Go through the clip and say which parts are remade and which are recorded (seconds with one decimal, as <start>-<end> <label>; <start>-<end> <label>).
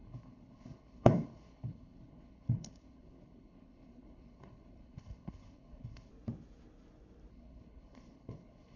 0.0-6.1 remade; 6.1-7.3 recorded; 7.3-8.8 remade